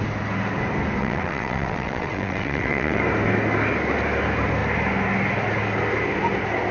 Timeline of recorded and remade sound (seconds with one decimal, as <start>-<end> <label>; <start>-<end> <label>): 0.0-1.0 recorded; 1.0-3.0 remade; 3.0-6.7 recorded